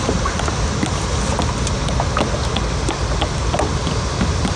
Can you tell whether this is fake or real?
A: real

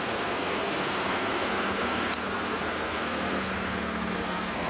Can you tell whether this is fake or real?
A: fake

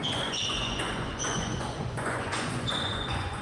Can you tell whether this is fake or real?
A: fake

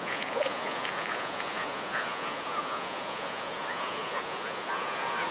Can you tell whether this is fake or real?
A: fake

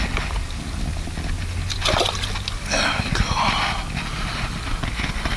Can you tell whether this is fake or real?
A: real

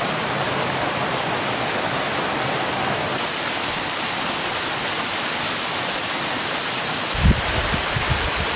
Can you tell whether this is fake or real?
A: real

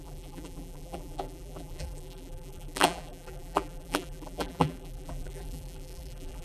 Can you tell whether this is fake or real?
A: fake